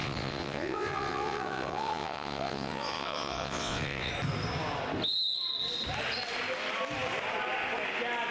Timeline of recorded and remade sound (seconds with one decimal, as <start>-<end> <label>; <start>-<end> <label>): 0.0-4.1 remade; 4.1-8.3 recorded